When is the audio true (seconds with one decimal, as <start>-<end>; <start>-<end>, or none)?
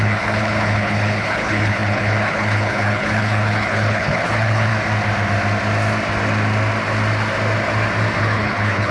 4.7-8.2